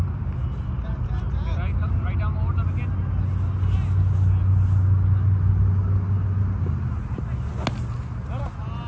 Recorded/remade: recorded